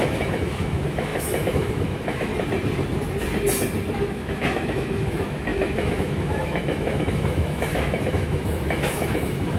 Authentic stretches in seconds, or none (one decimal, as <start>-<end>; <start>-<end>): 2.3-4.1